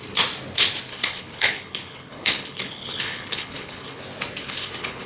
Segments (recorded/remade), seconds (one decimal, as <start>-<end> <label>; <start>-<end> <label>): 0.0-0.9 recorded; 0.9-4.0 remade; 4.0-4.4 recorded; 4.4-5.1 remade